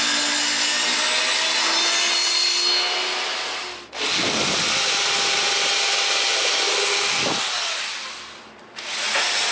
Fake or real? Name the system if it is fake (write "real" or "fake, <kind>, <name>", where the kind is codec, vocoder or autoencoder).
real